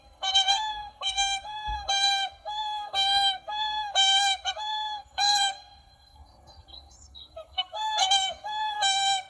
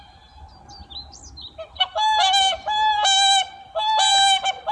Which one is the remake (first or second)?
first